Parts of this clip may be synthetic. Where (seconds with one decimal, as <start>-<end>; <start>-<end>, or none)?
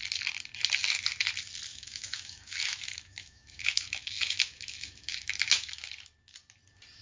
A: 1.7-5.9